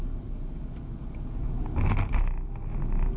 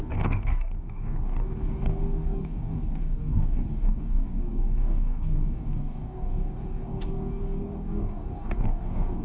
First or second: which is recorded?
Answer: first